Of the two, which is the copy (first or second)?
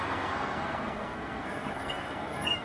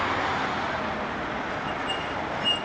first